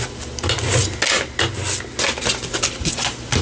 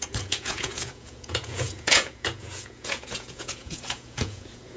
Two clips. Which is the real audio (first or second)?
first